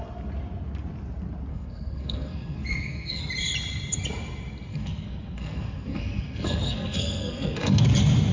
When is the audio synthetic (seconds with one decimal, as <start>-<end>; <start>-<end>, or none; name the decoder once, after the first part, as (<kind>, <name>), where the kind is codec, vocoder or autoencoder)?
1.5-3.2 (codec, SNAC); 4.7-7.8